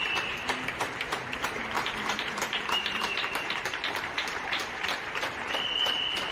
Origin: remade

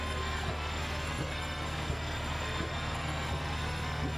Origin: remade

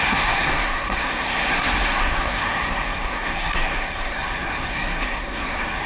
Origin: remade